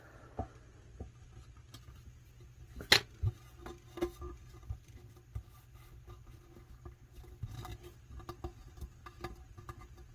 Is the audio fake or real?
real